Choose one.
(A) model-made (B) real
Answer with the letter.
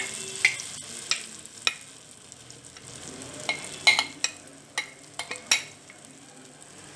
B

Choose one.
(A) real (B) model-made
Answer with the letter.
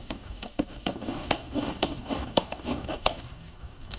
B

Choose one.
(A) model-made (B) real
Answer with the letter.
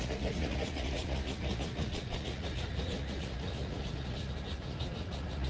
A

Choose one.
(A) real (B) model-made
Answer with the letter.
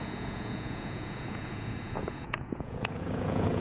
B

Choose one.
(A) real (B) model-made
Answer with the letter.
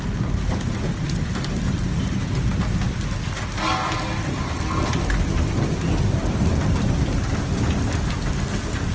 A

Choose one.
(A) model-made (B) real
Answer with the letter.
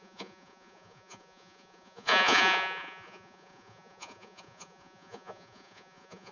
A